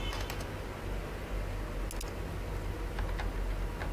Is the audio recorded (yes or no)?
yes